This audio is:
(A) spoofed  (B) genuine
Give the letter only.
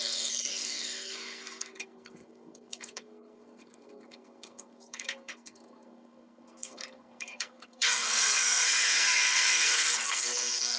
A